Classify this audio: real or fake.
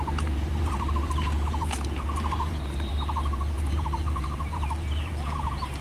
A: fake